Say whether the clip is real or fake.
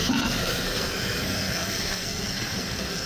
fake